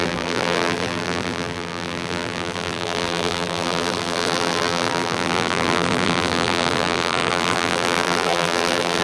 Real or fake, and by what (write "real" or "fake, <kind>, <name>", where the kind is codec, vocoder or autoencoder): fake, vocoder, BigVGAN v2